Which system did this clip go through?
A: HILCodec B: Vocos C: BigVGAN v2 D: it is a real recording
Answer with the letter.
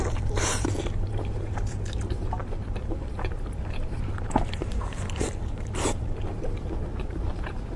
C